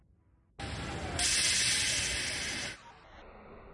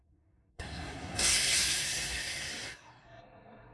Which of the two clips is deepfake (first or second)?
second